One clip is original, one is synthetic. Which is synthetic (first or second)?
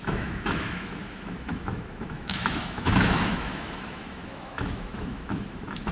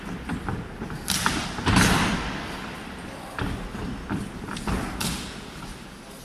first